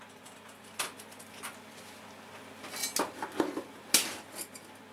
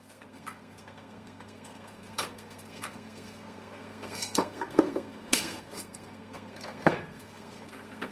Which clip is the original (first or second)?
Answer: first